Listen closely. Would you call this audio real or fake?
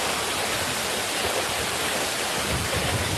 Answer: real